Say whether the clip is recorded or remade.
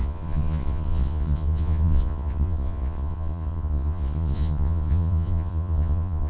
remade